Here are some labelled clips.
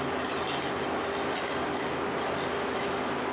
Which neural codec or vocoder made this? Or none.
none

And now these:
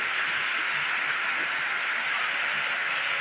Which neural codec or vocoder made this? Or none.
none